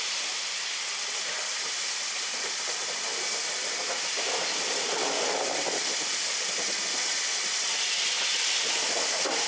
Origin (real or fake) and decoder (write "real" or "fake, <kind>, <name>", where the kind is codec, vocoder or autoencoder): real